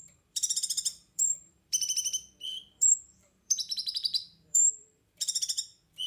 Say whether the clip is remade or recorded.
remade